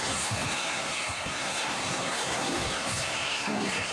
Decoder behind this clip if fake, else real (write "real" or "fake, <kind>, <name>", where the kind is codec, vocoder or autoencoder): fake, codec, SNAC